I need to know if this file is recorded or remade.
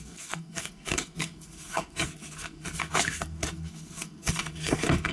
remade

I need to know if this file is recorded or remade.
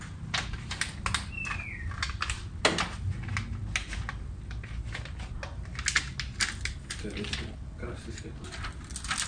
recorded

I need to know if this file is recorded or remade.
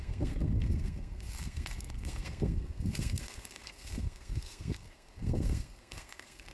remade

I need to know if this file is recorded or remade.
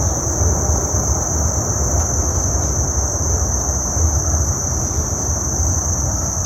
recorded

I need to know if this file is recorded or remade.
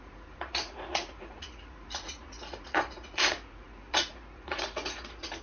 remade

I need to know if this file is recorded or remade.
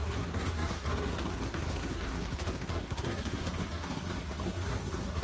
remade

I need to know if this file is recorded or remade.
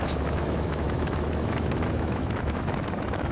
remade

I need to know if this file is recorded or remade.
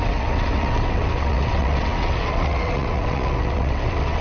remade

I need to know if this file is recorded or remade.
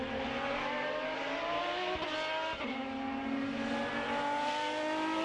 recorded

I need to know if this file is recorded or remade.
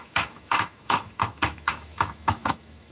remade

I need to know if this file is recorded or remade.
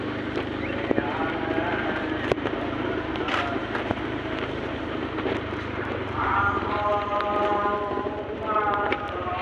remade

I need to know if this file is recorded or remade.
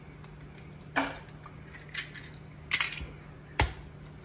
recorded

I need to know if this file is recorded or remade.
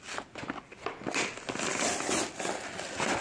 recorded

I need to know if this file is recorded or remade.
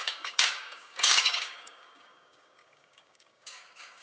remade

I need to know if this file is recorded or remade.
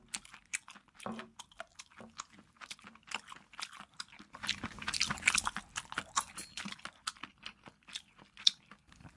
recorded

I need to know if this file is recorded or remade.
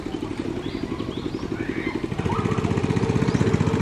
recorded